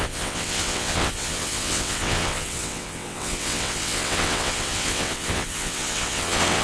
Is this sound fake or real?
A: fake